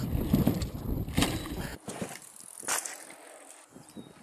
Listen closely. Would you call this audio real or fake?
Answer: fake